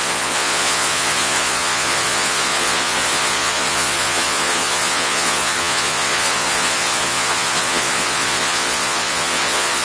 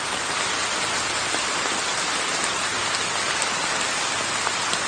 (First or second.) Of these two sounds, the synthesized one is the first